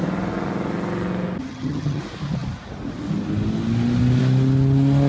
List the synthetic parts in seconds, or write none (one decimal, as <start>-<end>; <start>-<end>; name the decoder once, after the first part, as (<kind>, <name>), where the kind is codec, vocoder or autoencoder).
1.5-2.0 (vocoder, HiFi-GAN)